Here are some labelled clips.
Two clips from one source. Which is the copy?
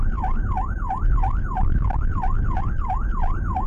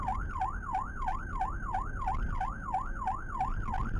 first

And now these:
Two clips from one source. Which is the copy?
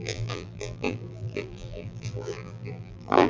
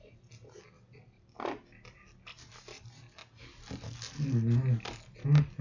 first